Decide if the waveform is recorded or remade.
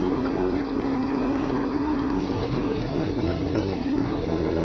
remade